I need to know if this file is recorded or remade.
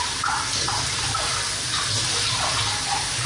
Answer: recorded